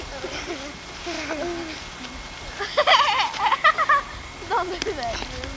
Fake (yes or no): no